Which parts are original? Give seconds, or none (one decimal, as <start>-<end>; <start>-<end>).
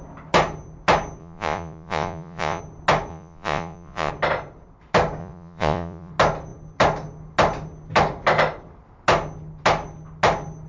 0.0-1.2; 2.6-3.1; 4.1-5.2; 6.1-10.7